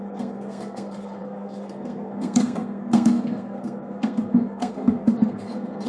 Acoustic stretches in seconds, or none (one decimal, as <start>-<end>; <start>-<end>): none